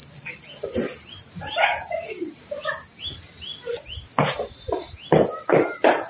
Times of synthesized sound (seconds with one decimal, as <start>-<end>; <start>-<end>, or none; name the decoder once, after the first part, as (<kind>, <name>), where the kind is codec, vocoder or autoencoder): none